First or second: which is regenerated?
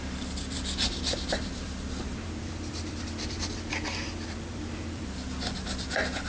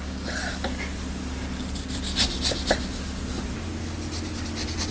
first